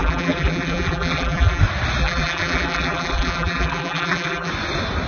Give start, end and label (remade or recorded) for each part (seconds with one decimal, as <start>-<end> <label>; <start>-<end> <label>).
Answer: 0.0-1.6 remade; 1.6-2.0 recorded; 2.0-4.5 remade; 4.5-5.1 recorded

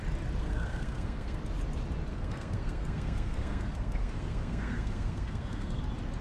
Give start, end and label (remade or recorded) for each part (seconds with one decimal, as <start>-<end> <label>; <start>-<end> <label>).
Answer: 0.0-0.4 recorded; 0.4-1.4 remade; 1.4-2.1 recorded; 2.1-5.8 remade; 5.8-6.2 recorded